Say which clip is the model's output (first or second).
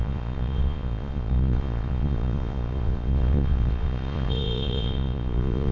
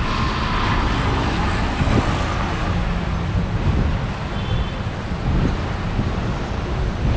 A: first